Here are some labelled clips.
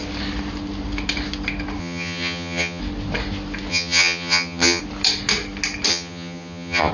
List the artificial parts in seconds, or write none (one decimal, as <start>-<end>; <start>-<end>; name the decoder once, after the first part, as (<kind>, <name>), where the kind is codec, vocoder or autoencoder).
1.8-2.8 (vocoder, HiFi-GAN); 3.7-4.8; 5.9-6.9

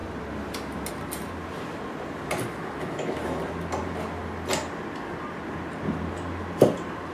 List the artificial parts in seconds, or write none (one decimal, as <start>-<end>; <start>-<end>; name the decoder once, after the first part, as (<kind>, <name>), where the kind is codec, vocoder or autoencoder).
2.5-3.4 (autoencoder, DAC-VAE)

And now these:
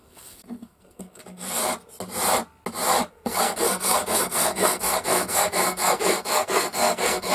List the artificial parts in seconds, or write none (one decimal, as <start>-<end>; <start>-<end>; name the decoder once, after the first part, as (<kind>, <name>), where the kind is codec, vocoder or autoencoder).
0.0-1.6 (codec, SNAC); 3.1-7.3

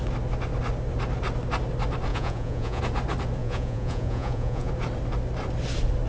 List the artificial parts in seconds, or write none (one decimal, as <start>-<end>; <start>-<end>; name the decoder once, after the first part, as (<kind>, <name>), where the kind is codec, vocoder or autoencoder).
2.1-2.8 (vocoder, Vocos); 3.4-4.7

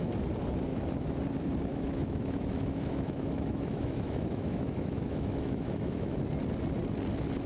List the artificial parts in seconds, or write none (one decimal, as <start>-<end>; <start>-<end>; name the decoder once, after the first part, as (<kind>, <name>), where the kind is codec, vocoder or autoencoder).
0.7-1.2 (autoencoder, DAC-VAE); 1.7-6.2

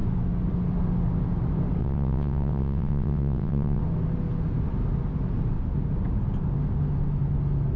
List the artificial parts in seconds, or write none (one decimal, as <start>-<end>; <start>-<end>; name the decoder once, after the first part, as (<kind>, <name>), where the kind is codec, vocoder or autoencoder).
1.8-3.8 (vocoder, WaveNeXt)